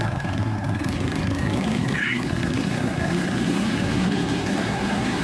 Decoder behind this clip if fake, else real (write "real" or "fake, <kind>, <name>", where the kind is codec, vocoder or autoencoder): fake, codec, SNAC